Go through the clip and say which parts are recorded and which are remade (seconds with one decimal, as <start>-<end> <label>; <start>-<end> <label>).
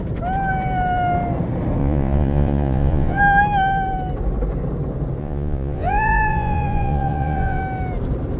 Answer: 0.0-1.8 recorded; 1.8-3.2 remade; 3.2-5.2 recorded; 5.2-7.6 remade; 7.6-8.4 recorded